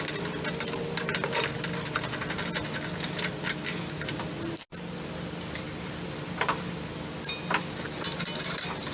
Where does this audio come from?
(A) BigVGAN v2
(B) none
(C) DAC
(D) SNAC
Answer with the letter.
B